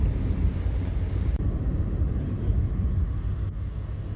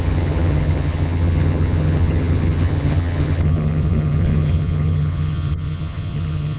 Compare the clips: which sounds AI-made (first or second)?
second